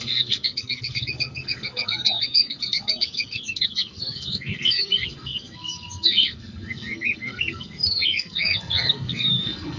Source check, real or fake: fake